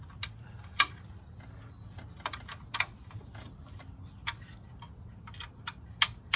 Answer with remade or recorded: recorded